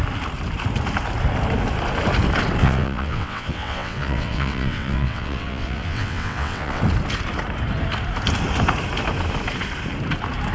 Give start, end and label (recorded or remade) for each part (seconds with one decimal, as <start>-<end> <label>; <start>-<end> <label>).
0.0-2.6 recorded; 2.6-6.8 remade; 6.8-10.5 recorded